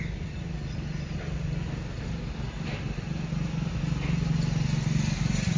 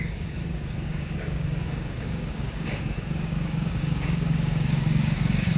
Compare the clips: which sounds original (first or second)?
first